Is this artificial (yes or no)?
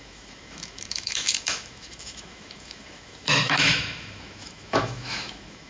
yes